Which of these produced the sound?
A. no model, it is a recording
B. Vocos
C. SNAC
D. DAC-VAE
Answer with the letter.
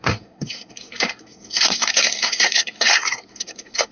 C